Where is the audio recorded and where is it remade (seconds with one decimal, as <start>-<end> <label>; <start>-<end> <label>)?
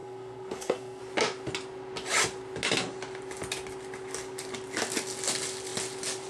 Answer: 0.0-1.0 remade; 1.0-6.3 recorded